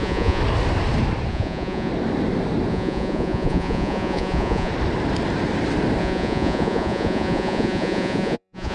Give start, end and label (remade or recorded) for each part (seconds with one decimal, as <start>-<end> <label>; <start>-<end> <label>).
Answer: 0.0-0.4 remade; 0.4-1.3 recorded; 1.3-1.9 remade; 1.9-2.7 recorded; 2.7-4.7 remade; 4.7-6.0 recorded; 6.0-8.7 remade